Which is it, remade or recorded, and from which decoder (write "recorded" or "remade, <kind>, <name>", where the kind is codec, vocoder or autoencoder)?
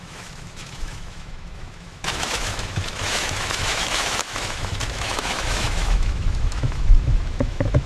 remade, autoencoder, DAC-VAE